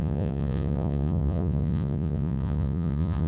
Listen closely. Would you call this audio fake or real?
fake